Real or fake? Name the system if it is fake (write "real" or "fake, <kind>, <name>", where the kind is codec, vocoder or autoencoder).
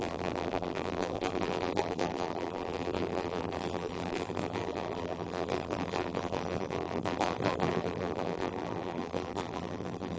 fake, vocoder, BigVGAN v2